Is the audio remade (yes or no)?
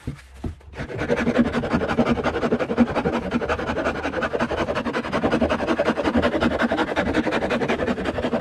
no